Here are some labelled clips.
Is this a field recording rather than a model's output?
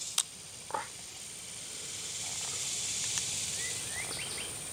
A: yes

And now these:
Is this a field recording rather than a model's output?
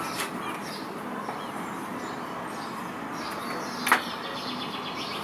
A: yes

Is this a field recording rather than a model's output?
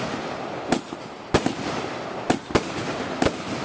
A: yes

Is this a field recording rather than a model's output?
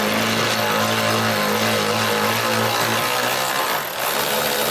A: yes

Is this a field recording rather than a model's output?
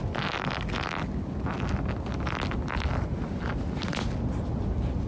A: yes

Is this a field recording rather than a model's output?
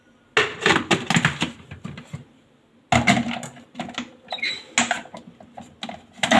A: yes